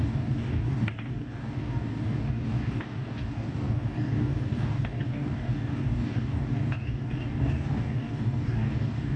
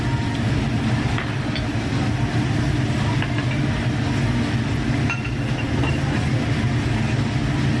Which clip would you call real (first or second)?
second